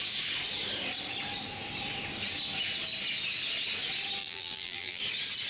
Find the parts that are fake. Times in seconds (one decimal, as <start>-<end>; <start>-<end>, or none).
4.2-5.0